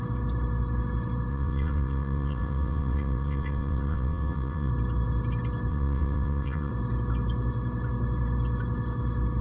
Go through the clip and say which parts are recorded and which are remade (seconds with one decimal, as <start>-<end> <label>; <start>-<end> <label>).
0.0-1.3 recorded; 1.3-4.7 remade; 4.7-5.7 recorded; 5.7-6.7 remade; 6.7-9.4 recorded